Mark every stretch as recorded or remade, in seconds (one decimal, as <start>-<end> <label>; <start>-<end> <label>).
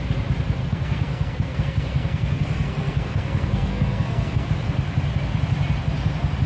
0.0-0.6 recorded; 0.6-4.5 remade; 4.5-6.5 recorded